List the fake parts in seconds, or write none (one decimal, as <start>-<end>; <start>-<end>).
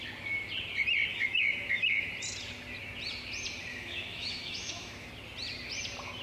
1.1-2.1; 3.7-5.1